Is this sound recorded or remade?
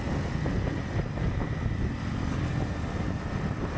recorded